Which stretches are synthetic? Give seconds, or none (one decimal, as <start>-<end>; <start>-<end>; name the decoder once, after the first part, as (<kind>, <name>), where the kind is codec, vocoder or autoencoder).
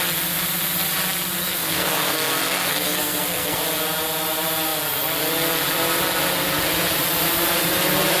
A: 1.4-3.6 (codec, SNAC)